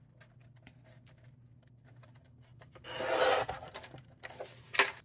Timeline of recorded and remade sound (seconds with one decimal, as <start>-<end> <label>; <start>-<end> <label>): 0.0-5.0 recorded